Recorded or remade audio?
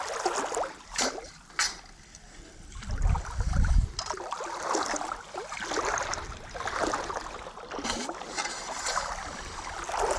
recorded